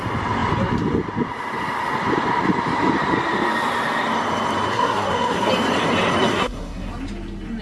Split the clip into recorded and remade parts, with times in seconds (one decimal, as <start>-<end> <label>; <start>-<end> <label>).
0.0-4.7 recorded; 4.7-5.5 remade; 5.5-6.3 recorded; 6.3-6.9 remade; 6.9-7.6 recorded